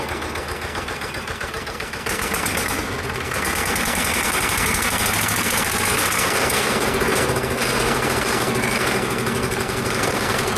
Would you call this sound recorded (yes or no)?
no